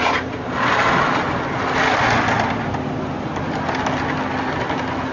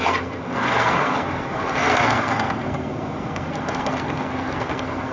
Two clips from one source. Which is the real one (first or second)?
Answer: first